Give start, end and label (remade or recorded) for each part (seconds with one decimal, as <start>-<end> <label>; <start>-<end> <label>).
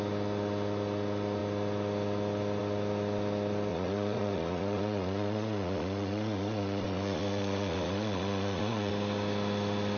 0.0-3.7 recorded; 3.7-8.9 remade; 8.9-10.0 recorded